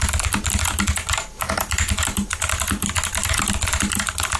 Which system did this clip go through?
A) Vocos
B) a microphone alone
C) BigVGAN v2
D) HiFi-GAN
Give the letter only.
B